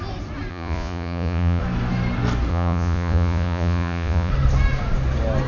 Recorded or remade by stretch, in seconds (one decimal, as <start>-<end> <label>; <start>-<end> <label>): 0.0-0.5 recorded; 0.5-1.6 remade; 1.6-2.5 recorded; 2.5-4.3 remade; 4.3-5.5 recorded